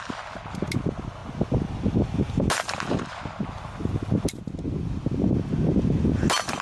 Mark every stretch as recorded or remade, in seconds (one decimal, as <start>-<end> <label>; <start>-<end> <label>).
0.0-6.6 recorded